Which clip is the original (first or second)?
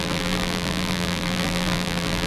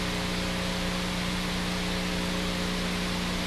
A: second